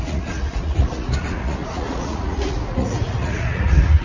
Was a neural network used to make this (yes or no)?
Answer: yes